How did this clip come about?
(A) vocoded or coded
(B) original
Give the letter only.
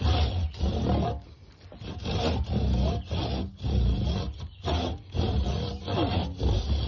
B